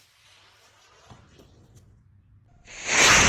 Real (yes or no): yes